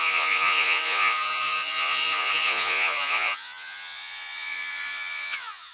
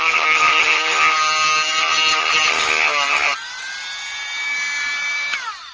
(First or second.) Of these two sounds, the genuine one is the second